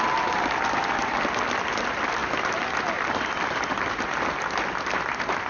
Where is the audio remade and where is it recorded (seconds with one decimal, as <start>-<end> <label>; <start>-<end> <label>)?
0.0-5.5 recorded